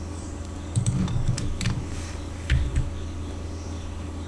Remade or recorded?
remade